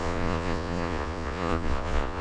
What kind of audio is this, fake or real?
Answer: fake